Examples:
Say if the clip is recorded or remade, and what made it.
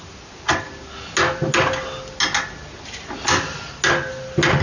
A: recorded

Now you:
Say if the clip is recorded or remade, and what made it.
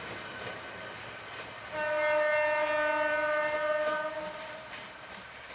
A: recorded